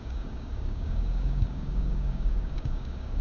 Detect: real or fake fake